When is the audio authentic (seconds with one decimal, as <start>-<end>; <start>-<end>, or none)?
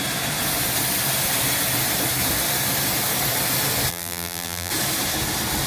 0.0-3.9; 4.7-5.7